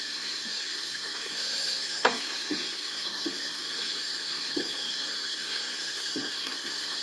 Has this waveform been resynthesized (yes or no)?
yes